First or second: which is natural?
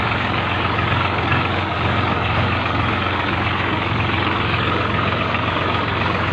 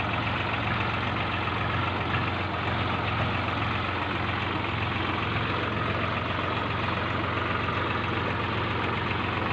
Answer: second